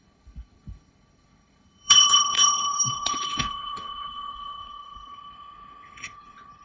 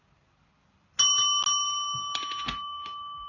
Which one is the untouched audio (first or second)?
second